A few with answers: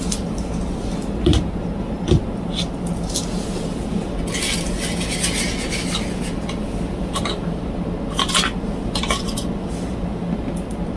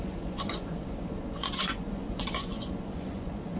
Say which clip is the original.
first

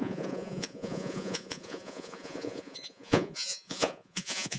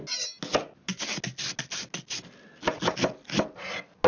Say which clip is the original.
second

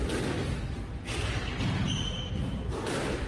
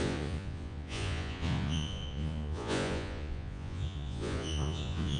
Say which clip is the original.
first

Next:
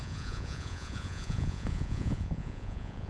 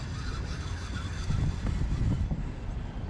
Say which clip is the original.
second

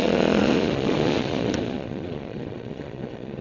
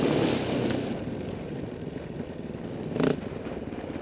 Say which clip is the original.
second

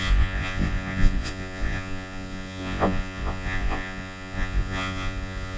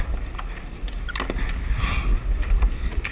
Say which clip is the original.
second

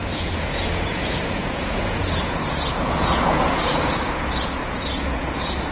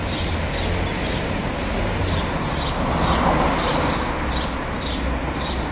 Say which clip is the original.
second